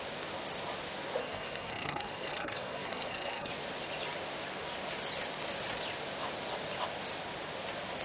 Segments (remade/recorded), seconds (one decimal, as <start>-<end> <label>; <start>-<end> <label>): 0.0-1.2 recorded; 1.2-3.5 remade; 3.5-8.0 recorded